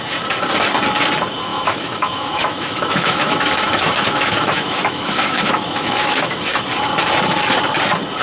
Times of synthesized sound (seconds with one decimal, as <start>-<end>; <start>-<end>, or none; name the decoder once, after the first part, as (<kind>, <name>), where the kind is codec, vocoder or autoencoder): 1.5-6.4 (autoencoder, DAC-VAE)